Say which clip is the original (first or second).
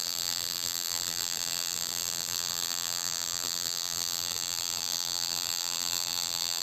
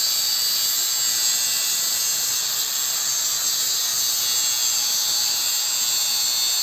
second